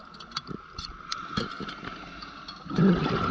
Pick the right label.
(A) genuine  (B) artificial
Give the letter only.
A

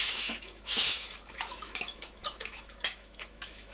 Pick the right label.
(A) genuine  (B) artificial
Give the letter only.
B